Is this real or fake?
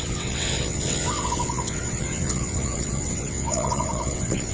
fake